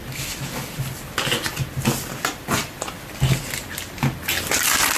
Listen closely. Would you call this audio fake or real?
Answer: real